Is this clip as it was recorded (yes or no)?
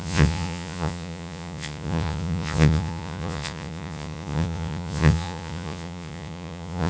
no